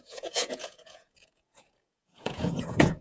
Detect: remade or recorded remade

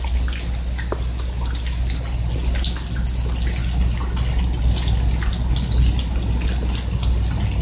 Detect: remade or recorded recorded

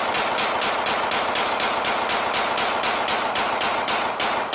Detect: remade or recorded recorded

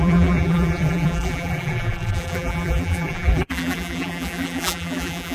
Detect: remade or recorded remade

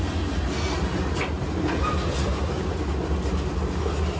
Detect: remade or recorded recorded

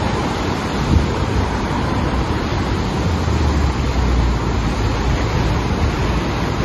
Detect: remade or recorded recorded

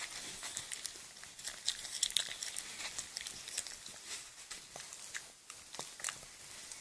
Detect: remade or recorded recorded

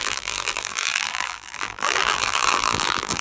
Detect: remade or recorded remade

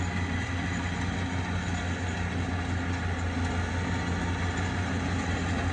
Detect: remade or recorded recorded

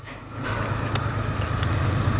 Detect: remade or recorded recorded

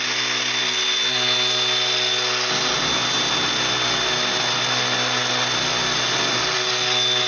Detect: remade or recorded recorded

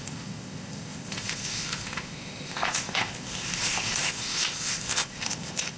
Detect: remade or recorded remade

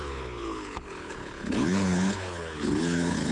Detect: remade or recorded remade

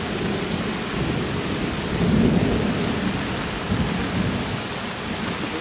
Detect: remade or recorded recorded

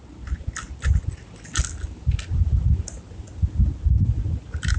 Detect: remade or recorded recorded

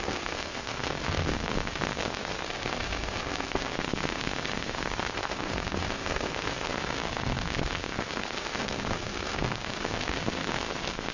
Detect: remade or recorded remade